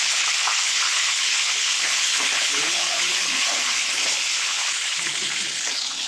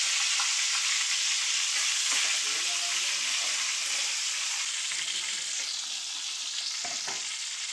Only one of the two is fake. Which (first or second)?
first